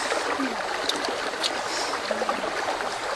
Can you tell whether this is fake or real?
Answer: real